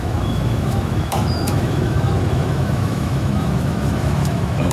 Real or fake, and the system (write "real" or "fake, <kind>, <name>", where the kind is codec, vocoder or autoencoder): fake, autoencoder, DAC-VAE